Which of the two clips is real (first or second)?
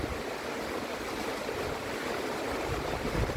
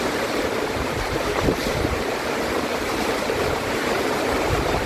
first